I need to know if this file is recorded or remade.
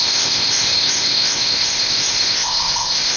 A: remade